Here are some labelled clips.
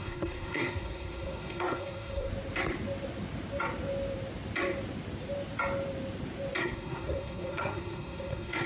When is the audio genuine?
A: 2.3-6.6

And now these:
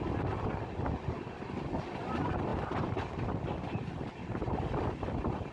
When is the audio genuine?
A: 0.0-5.5

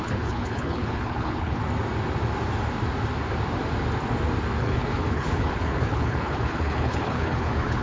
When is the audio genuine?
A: 1.6-4.6

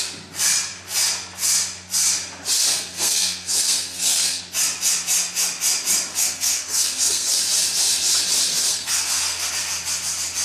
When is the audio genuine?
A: 0.0-2.7; 4.4-6.1; 7.4-8.6; 9.5-10.4

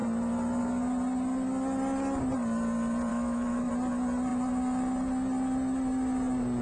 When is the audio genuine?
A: 0.0-3.1; 3.7-6.6

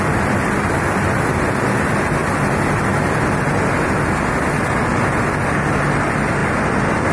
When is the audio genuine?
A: 0.0-7.1